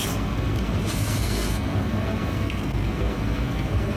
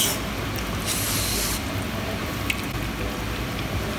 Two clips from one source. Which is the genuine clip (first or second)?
second